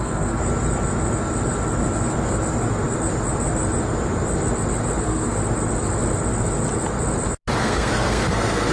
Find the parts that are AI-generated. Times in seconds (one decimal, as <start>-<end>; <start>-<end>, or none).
0.0-0.4; 5.0-5.4; 7.6-8.7